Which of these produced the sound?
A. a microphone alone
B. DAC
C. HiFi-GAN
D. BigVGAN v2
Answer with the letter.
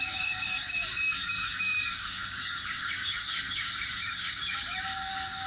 B